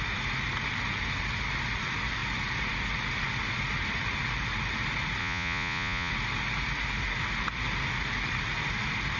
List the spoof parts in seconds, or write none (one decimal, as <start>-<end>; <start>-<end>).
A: 5.2-6.1